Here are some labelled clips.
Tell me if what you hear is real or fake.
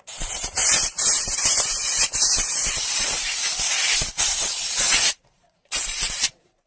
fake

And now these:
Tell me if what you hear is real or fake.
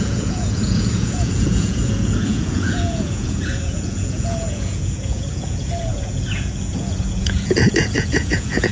fake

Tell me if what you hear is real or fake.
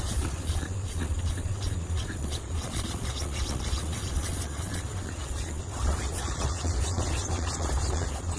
fake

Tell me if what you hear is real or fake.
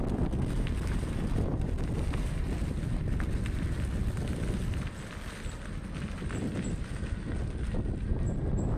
real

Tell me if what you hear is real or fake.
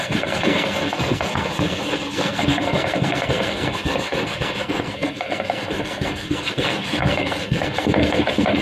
fake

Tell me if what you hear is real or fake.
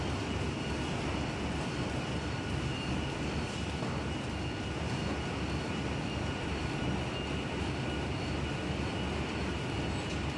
real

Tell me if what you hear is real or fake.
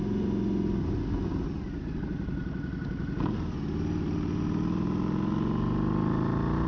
real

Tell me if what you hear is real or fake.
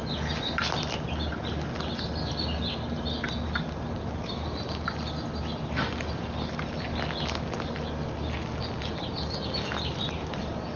real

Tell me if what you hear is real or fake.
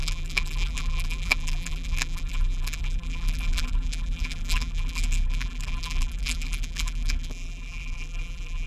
fake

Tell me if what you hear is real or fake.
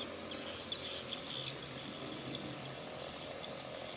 real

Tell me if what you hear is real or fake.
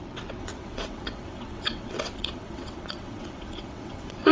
fake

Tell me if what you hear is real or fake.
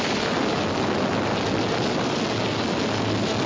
real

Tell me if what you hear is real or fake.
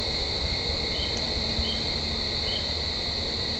real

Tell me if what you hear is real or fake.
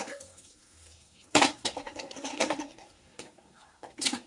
fake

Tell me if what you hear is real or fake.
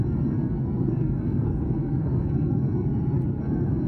fake